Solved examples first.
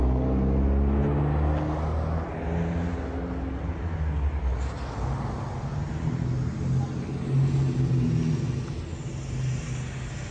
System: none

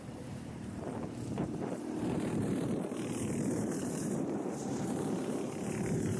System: vocoder, BigVGAN v2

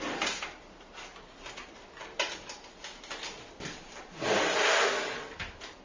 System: none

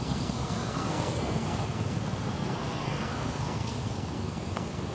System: codec, SNAC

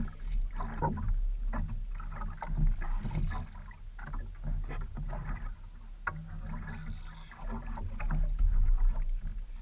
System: none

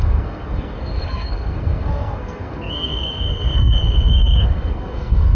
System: codec, SNAC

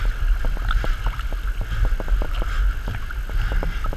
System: none